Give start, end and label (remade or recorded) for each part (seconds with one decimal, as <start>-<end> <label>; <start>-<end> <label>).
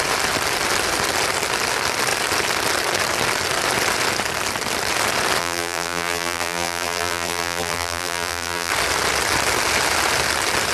0.0-5.4 recorded; 5.4-8.7 remade; 8.7-10.7 recorded